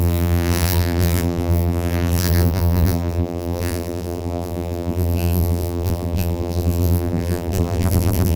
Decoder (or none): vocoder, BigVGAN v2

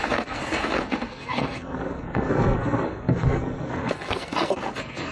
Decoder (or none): codec, SNAC